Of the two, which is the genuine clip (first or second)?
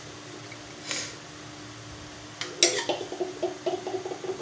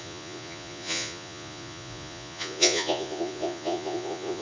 first